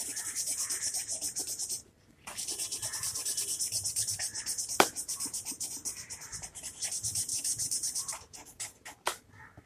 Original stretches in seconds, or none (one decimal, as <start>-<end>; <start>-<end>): 3.1-4.7